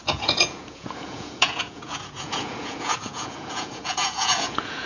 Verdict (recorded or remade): remade